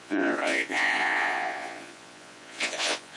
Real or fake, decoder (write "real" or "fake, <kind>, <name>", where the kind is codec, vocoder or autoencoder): fake, vocoder, Vocos